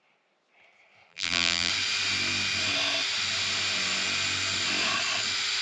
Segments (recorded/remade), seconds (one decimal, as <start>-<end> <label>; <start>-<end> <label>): 0.0-1.1 recorded; 1.1-1.7 remade; 1.7-5.6 recorded